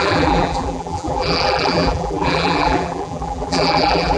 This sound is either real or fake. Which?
fake